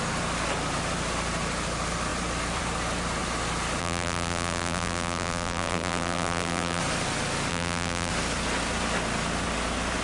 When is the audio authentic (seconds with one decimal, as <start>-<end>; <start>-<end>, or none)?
0.0-3.8; 6.8-7.5; 8.1-10.0